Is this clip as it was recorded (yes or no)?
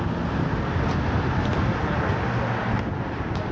yes